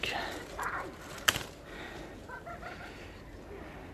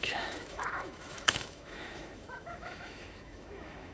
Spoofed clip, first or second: second